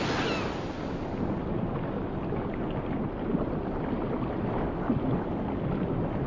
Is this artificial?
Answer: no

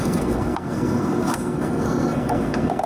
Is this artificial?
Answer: yes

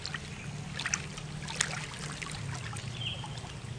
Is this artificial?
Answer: no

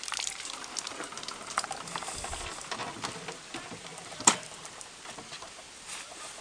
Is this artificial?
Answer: no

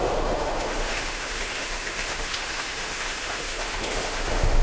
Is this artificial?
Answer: yes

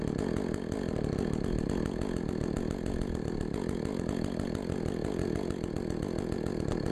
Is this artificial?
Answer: no